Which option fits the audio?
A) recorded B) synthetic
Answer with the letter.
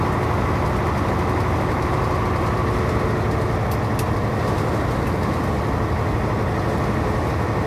A